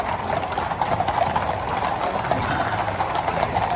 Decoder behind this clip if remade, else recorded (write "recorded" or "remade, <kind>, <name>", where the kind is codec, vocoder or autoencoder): recorded